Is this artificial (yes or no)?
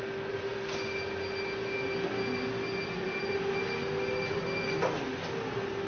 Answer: no